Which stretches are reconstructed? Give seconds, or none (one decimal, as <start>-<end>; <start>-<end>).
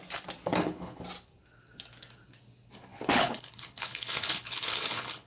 0.5-1.0; 2.9-5.3